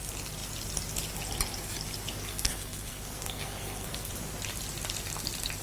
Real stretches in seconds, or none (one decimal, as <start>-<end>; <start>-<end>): 0.0-2.3; 4.1-5.6